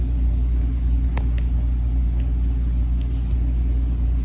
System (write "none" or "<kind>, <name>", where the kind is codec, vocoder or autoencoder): none